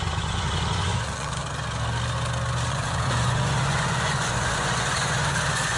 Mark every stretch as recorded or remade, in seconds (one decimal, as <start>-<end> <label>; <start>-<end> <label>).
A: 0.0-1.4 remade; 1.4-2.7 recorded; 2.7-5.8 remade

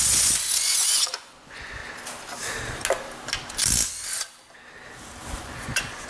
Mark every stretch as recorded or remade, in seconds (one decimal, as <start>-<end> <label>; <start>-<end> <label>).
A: 0.0-1.8 remade; 1.8-5.4 recorded; 5.4-6.1 remade

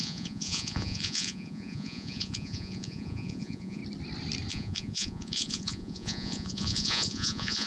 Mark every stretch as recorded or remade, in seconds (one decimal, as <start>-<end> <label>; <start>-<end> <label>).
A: 0.0-3.8 remade; 3.8-4.5 recorded; 4.5-7.7 remade

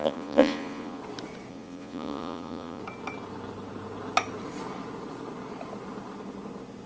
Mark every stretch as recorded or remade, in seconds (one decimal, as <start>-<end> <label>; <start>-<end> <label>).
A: 0.0-1.0 remade; 1.0-1.5 recorded; 1.5-2.8 remade; 2.8-6.9 recorded

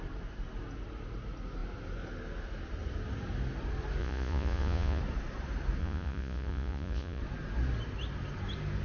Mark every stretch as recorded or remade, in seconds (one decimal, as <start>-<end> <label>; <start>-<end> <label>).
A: 0.0-4.0 recorded; 4.0-5.0 remade; 5.0-5.8 recorded; 5.8-7.2 remade; 7.2-8.8 recorded

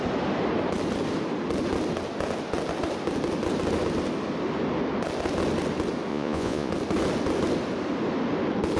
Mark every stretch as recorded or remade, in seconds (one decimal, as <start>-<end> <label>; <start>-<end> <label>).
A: 0.0-6.1 recorded; 6.1-6.7 remade; 6.7-8.8 recorded

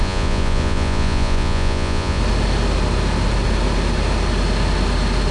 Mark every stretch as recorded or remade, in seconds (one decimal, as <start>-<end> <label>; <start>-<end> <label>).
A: 0.0-2.2 remade; 2.2-5.3 recorded